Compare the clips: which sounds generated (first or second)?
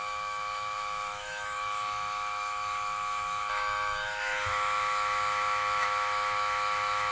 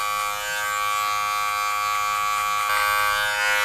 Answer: first